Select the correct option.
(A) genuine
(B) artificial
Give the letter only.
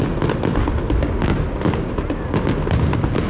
A